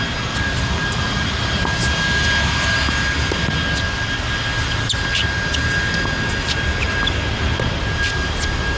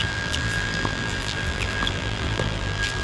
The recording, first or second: first